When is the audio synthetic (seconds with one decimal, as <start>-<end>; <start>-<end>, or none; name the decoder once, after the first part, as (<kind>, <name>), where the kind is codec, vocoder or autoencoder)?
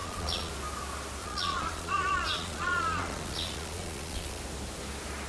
0.0-0.5 (vocoder, Vocos); 1.2-4.4